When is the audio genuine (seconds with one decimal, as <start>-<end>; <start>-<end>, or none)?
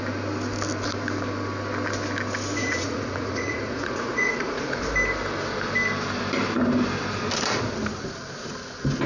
0.0-2.6; 4.8-9.1